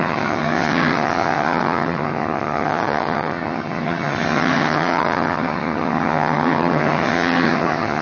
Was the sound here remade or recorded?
remade